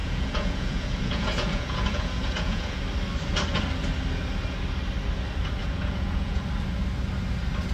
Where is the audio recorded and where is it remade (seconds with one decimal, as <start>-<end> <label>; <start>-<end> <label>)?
0.0-2.8 remade; 2.8-5.6 recorded; 5.6-6.4 remade; 6.4-7.7 recorded